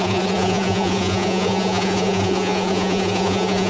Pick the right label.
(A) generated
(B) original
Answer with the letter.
A